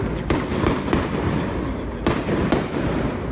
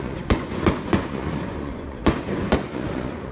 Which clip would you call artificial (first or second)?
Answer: second